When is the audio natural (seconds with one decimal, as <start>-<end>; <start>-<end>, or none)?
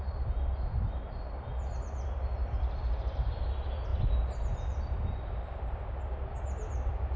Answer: 0.0-7.2